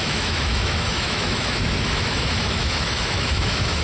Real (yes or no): no